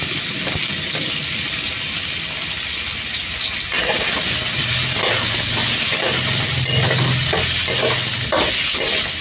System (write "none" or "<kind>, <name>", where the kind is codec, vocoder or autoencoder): none